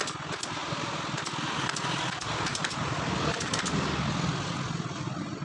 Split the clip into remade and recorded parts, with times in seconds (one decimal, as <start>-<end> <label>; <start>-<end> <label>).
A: 0.0-0.6 recorded; 0.6-1.2 remade; 1.2-2.5 recorded; 2.5-3.9 remade; 3.9-5.4 recorded